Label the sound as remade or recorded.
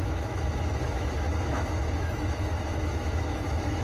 remade